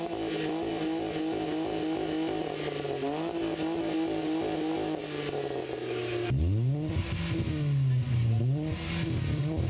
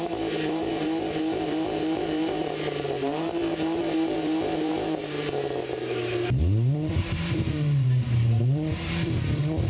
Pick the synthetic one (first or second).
second